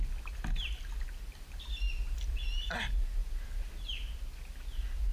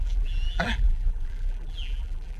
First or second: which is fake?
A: second